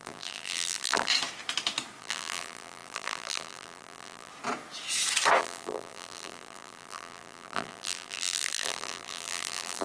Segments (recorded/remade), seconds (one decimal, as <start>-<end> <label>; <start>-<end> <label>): 0.0-1.1 remade; 1.1-2.0 recorded; 2.0-4.3 remade; 4.3-5.4 recorded; 5.4-9.8 remade